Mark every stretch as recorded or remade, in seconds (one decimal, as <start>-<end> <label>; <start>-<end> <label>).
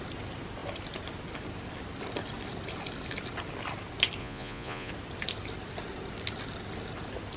0.0-4.2 recorded; 4.2-4.9 remade; 4.9-7.4 recorded